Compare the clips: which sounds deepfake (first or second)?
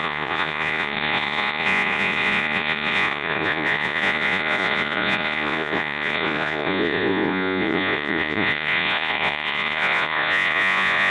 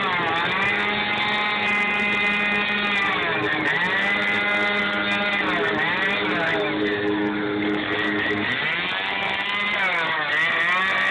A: first